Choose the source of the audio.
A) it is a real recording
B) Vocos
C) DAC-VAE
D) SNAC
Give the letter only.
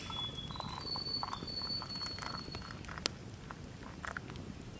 A